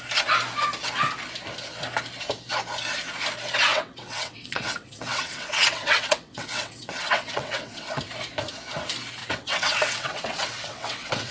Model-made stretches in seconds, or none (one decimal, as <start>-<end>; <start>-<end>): 3.7-8.0; 9.2-11.3